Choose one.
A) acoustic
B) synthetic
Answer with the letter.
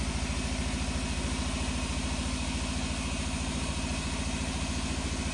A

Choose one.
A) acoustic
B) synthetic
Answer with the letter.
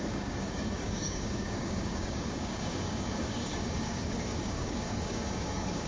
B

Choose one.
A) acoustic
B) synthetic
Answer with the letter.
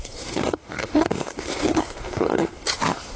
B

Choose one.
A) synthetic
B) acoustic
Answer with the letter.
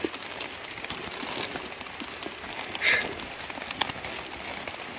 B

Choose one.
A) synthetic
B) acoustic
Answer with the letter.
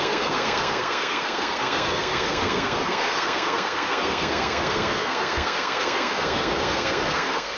A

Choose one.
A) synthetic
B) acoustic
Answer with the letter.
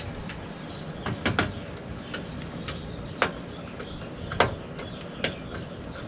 B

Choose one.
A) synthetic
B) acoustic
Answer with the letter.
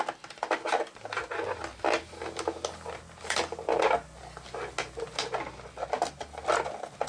B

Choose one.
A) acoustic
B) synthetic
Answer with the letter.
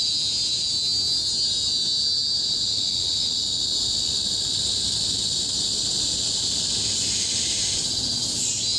A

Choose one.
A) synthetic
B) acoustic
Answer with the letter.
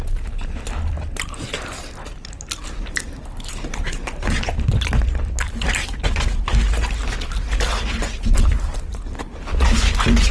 B